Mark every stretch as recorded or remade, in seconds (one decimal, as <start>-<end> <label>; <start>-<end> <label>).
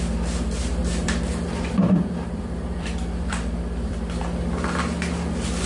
0.0-0.8 recorded; 0.8-4.2 remade; 4.2-5.7 recorded